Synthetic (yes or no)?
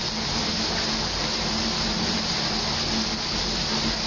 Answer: no